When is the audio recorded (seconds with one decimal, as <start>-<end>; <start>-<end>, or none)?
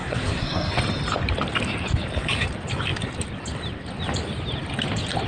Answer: 0.7-5.3